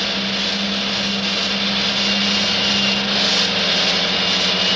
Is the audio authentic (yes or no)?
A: yes